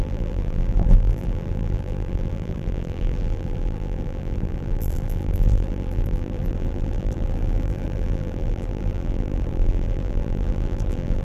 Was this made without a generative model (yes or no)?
no